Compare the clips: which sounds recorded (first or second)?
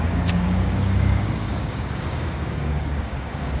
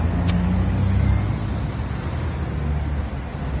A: second